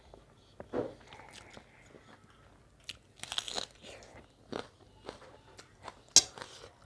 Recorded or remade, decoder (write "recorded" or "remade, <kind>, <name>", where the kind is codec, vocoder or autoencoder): recorded